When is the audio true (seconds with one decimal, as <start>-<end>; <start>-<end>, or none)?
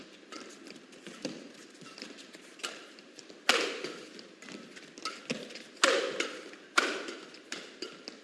3.2-8.2